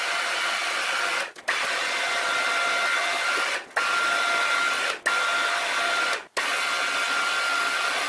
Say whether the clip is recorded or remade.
recorded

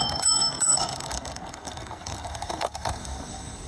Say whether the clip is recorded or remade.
remade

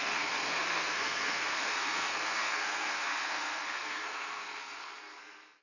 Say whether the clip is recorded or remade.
remade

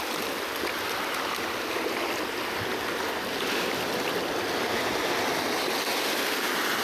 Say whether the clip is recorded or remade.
recorded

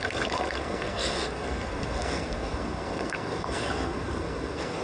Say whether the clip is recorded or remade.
remade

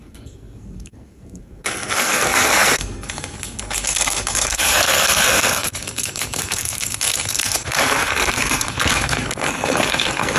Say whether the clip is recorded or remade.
remade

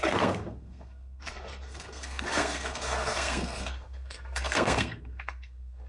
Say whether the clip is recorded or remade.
remade